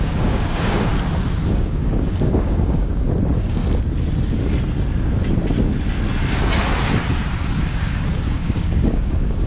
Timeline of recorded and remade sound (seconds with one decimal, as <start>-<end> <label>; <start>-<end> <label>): 0.0-0.9 remade; 0.9-1.5 recorded; 1.5-3.6 remade; 3.6-7.6 recorded; 7.6-9.5 remade